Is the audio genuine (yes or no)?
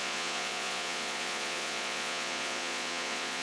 no